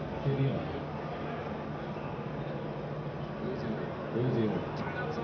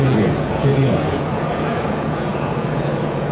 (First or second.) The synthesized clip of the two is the second